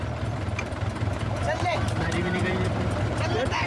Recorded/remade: remade